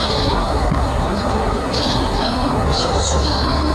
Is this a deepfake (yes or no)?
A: yes